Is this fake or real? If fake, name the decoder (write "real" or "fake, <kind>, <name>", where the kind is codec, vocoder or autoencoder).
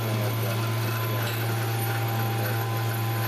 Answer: real